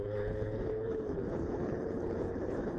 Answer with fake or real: fake